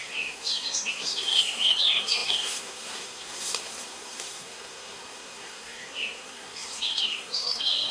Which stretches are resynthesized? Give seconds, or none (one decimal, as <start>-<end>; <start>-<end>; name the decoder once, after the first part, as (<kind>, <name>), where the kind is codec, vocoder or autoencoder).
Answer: 0.0-7.9 (codec, SNAC)